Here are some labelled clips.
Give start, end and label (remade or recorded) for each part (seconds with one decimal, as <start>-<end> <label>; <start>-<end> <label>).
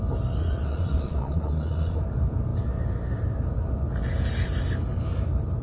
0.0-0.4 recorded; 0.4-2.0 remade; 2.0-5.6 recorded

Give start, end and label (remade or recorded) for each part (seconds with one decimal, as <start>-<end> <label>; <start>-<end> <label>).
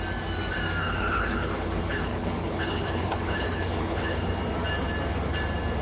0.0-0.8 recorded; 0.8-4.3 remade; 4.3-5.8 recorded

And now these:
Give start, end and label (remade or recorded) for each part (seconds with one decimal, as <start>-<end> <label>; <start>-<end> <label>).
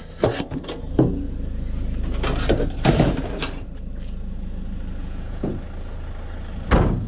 0.0-5.0 recorded; 5.0-5.5 remade; 5.5-7.1 recorded